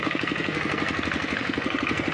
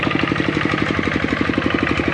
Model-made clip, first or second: first